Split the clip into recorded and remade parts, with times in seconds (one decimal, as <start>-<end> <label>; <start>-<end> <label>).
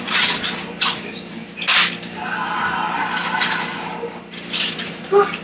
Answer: 0.0-1.4 remade; 1.4-4.6 recorded; 4.6-5.4 remade